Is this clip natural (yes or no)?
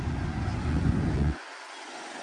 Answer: no